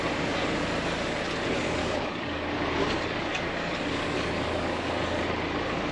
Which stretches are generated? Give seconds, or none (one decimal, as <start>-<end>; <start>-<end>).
1.8-5.3